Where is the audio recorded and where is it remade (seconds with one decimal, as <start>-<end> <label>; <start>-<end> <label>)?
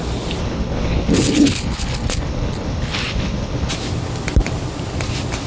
0.0-0.4 recorded; 0.4-3.7 remade; 3.7-5.5 recorded